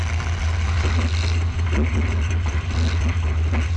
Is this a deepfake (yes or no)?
no